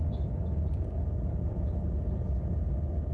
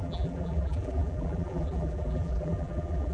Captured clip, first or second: first